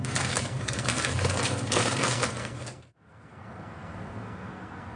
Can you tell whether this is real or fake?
fake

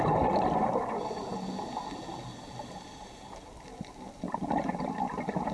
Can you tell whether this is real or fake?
real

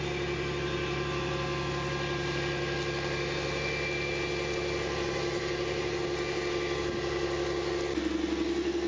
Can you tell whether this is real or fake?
real